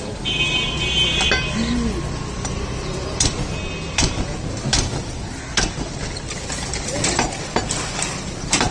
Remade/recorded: recorded